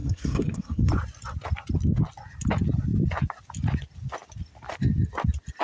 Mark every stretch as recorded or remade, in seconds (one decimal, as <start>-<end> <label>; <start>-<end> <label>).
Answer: 0.0-0.9 remade; 0.9-5.6 recorded